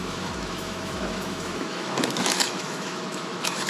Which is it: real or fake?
fake